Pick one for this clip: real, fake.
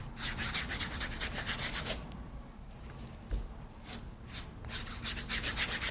real